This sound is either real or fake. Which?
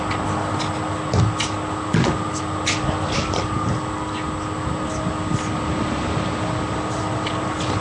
real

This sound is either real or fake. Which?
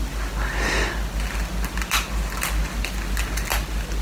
real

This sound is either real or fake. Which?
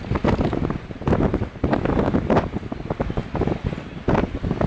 real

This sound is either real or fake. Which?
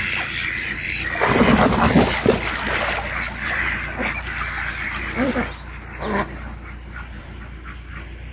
fake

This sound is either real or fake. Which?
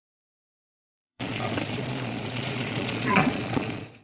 fake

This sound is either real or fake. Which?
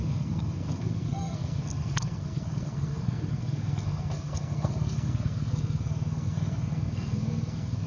fake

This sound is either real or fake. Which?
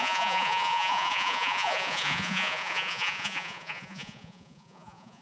fake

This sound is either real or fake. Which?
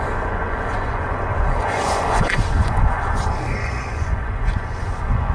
fake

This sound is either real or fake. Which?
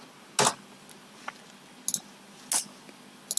real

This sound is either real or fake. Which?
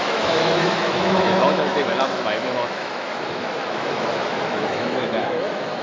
fake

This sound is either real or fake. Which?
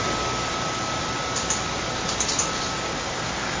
fake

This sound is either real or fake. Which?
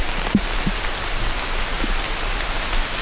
real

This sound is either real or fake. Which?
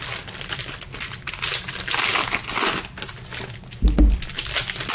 real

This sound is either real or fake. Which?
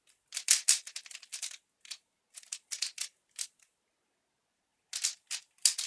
real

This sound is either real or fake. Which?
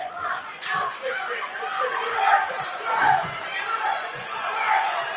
fake